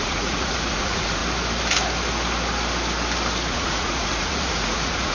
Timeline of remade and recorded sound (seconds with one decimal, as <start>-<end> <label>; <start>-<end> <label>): 0.0-1.2 remade; 1.2-3.5 recorded; 3.5-5.1 remade